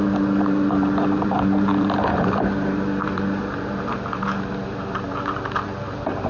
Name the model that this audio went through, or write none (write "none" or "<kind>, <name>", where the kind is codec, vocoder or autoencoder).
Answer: vocoder, BigVGAN v2